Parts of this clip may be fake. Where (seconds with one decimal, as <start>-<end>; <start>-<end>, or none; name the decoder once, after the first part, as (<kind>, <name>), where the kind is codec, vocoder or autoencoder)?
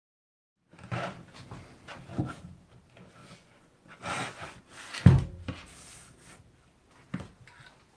3.2-4.6 (vocoder, Vocos)